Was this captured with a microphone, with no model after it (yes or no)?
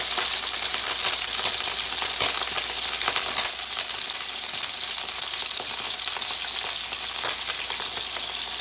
yes